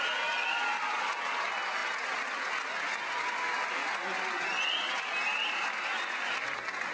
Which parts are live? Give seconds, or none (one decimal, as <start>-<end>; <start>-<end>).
0.0-6.9